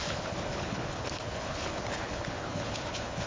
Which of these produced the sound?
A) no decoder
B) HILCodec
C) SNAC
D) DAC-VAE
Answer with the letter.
B